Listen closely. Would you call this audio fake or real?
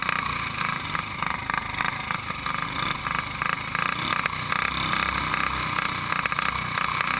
real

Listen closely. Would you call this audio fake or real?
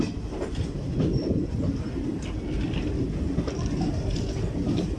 real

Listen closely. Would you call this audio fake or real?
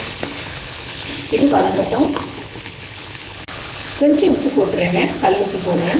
fake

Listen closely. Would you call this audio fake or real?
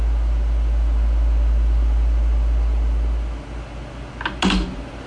real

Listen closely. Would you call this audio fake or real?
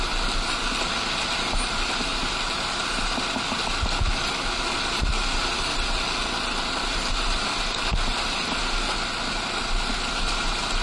real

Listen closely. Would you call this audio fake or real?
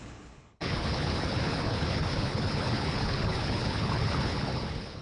fake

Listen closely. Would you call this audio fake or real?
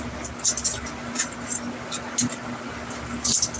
real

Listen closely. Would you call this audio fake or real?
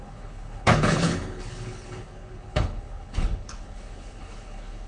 fake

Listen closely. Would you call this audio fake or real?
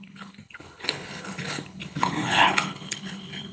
fake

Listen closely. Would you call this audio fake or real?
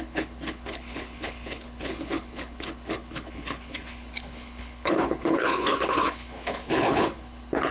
fake